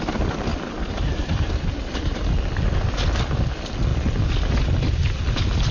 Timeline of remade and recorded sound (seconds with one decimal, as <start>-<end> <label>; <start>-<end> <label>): 0.0-0.5 recorded; 0.5-2.2 remade; 2.2-3.9 recorded; 3.9-5.7 remade